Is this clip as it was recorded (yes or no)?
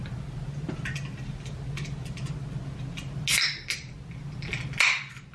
yes